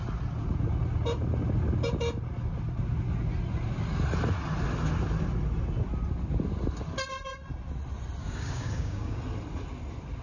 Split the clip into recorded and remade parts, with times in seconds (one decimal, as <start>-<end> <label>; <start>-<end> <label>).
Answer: 0.0-8.2 recorded; 8.2-9.2 remade; 9.2-10.2 recorded